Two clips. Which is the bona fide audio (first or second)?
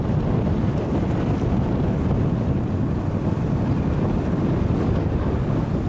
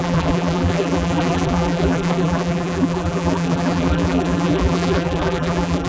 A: first